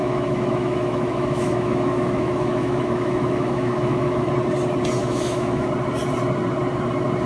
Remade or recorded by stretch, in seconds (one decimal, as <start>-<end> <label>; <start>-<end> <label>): 0.0-4.3 remade; 4.3-5.0 recorded; 5.0-5.7 remade; 5.7-7.3 recorded